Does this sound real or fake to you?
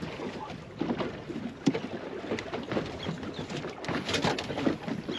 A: real